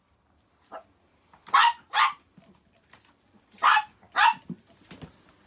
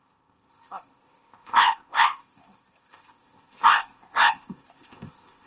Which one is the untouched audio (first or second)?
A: first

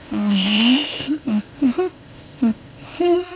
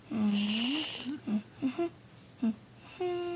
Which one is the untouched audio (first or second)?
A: second